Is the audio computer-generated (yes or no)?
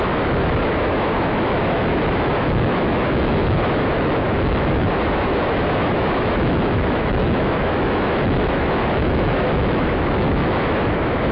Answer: yes